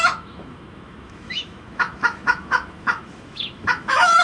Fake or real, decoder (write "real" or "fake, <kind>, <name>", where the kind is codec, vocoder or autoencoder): fake, autoencoder, DAC-VAE